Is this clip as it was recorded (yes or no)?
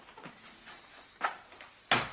yes